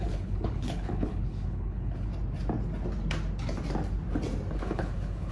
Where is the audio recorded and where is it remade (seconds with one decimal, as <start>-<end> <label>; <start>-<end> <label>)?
0.0-2.1 remade; 2.1-4.6 recorded; 4.6-5.3 remade